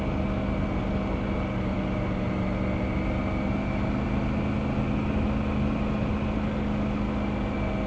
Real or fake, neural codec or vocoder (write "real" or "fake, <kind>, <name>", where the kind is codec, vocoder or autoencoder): real